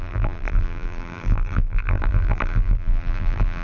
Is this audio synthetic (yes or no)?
yes